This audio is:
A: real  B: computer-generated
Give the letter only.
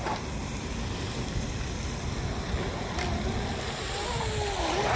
A